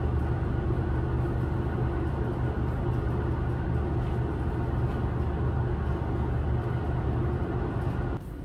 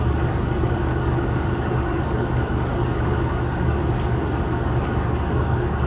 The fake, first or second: second